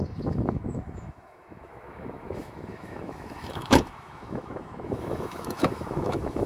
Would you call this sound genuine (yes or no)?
no